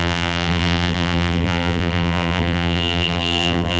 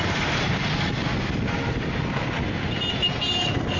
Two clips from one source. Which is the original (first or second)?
second